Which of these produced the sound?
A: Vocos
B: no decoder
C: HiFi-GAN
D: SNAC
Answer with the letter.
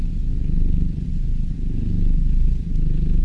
B